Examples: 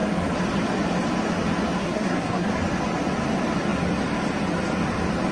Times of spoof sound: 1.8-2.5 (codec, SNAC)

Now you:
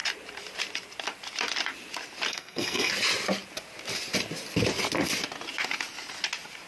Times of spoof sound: 2.3-2.9 (codec, SNAC)